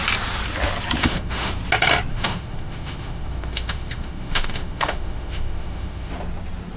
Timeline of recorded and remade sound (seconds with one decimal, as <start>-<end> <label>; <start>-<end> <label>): 0.0-1.0 recorded; 1.0-1.5 remade; 1.5-2.1 recorded; 2.1-6.1 remade; 6.1-6.8 recorded